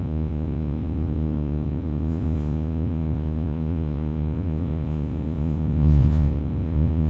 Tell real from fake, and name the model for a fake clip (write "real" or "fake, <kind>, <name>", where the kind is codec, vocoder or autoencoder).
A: fake, vocoder, Vocos